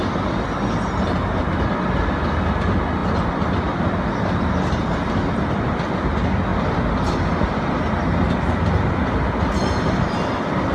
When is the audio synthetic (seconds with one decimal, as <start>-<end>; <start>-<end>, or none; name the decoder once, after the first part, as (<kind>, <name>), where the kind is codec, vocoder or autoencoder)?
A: none